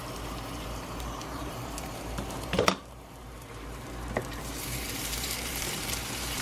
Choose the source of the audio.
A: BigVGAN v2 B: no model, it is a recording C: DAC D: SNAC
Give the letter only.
A